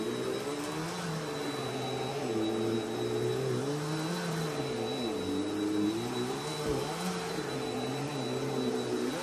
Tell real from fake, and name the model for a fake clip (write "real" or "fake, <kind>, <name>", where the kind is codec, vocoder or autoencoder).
real